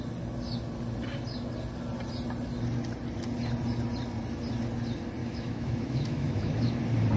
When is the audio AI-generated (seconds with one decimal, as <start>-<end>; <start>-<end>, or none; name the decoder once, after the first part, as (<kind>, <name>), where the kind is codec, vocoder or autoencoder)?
5.2-6.7 (autoencoder, DAC-VAE)